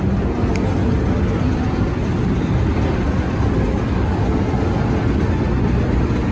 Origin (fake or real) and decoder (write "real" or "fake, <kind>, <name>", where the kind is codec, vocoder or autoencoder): real